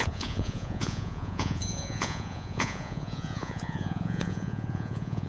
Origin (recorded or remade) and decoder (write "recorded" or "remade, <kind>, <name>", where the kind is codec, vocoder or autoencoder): remade, vocoder, Vocos